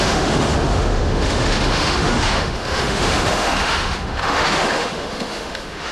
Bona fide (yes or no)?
no